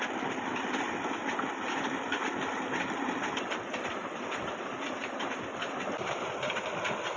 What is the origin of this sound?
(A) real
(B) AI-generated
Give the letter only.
A